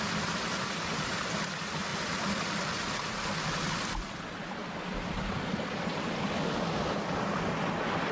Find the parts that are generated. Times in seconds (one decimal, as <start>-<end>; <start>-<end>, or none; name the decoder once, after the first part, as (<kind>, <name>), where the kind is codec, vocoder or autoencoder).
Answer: 1.9-2.4 (vocoder, BigVGAN v2); 4.6-6.5